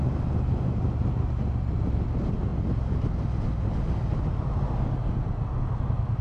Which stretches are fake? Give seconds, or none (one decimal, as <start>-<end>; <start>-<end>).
none